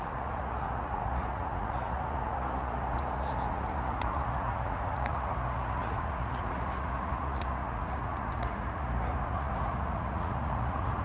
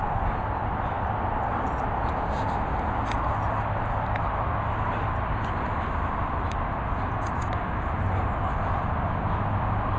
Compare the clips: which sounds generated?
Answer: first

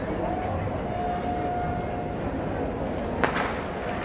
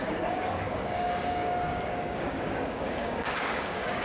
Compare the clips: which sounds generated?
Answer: second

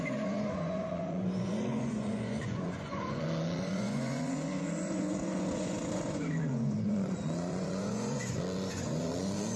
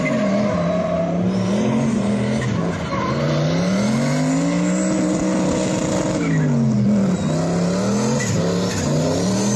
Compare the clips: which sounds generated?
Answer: first